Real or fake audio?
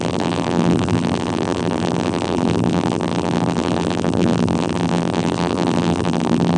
fake